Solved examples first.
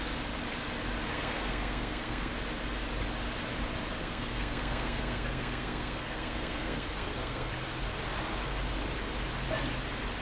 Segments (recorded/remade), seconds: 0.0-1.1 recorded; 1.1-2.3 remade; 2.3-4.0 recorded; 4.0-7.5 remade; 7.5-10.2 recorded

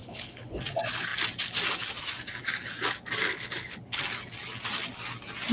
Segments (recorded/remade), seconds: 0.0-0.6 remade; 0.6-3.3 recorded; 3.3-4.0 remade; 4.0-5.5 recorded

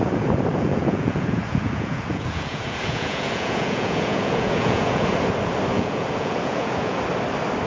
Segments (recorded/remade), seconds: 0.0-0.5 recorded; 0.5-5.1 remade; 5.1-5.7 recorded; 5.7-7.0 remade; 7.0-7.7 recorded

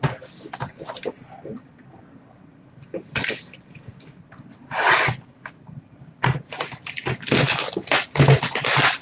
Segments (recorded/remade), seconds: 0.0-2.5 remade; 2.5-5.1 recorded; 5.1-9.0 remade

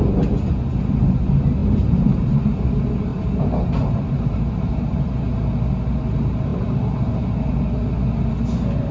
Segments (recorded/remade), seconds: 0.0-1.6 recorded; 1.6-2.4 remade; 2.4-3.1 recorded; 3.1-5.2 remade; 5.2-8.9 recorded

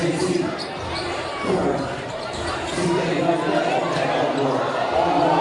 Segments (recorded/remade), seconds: 0.0-3.2 remade; 3.2-5.4 recorded

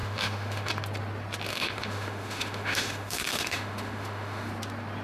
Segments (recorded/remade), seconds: 0.0-0.7 remade; 0.7-1.5 recorded; 1.5-4.5 remade; 4.5-5.0 recorded